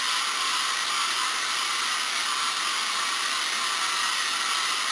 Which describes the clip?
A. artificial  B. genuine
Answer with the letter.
B